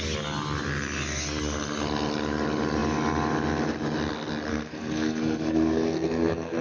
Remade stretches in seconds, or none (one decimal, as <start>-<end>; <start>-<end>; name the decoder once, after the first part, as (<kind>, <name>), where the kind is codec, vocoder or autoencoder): 4.5-6.6 (codec, SNAC)